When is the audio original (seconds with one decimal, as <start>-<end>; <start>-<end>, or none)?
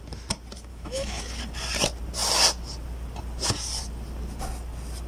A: 0.0-0.7; 1.2-5.1